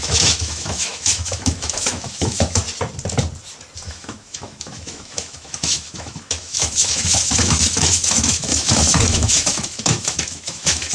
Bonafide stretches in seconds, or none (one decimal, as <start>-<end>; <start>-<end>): 2.6-3.9